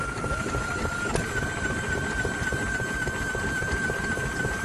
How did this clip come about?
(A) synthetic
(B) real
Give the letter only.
B